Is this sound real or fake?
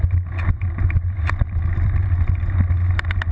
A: real